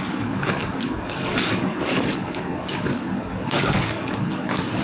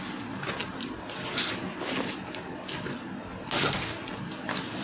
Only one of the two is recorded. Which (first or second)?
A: second